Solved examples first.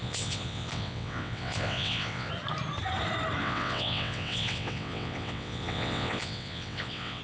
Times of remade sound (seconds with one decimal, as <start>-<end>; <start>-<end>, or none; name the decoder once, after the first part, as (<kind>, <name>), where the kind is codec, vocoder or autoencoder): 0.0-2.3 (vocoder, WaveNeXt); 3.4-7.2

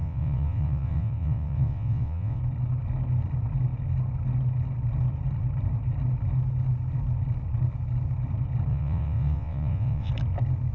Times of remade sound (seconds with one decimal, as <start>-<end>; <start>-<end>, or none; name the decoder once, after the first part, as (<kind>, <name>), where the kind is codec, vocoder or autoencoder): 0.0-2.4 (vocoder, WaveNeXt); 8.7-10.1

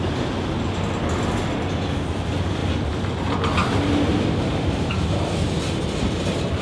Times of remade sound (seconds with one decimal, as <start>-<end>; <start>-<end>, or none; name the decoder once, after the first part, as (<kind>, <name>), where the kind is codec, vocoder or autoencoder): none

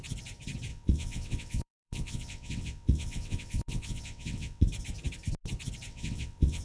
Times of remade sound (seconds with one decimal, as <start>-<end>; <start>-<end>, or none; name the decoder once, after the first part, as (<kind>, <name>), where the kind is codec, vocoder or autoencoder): 0.7-4.6 (vocoder, WaveNeXt); 5.9-6.6

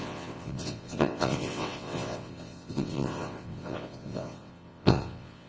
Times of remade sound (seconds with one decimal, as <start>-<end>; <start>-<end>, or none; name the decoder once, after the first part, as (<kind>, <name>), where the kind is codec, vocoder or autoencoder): 0.0-5.5 (vocoder, WaveNeXt)

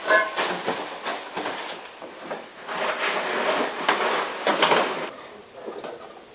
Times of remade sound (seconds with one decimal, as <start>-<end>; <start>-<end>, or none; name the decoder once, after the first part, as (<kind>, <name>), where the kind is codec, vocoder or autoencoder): none

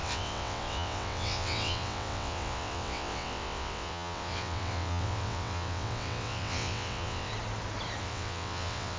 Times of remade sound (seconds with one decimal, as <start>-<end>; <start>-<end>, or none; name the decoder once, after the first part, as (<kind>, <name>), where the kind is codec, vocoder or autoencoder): 0.0-7.3 (vocoder, WaveNeXt); 8.0-9.0

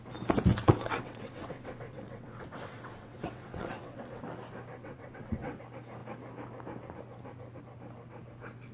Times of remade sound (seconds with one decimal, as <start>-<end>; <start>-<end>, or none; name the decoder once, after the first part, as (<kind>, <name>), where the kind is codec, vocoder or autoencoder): 0.5-4.2 (vocoder, WaveNeXt); 4.8-5.6